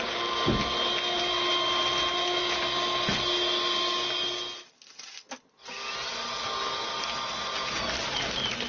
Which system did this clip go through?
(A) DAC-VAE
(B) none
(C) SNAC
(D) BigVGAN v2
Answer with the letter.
B